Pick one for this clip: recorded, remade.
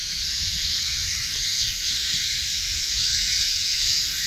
remade